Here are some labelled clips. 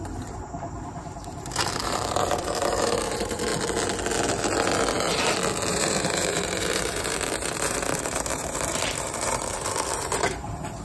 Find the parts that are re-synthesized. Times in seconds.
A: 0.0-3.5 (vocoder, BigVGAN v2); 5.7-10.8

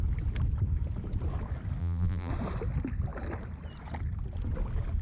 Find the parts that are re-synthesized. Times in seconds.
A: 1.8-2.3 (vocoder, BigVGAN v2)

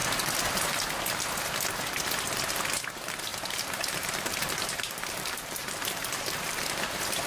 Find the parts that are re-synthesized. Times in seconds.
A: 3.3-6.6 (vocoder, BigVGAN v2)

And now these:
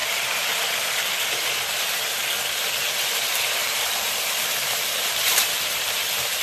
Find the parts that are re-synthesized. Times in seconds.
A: 0.0-2.0 (vocoder, BigVGAN v2); 3.6-6.0

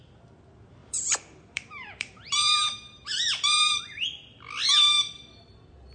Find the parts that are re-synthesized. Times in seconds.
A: 0.8-3.8 (vocoder, BigVGAN v2)